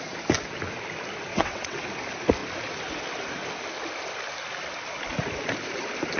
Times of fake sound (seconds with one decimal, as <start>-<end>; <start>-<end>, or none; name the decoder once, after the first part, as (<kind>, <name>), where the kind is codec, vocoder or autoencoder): 1.3-1.9 (vocoder, WaveNeXt)